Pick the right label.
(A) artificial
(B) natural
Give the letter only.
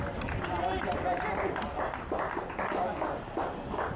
B